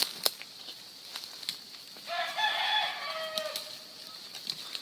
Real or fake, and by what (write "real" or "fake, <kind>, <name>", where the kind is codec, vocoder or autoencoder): real